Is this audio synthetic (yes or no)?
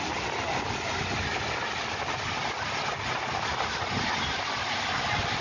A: no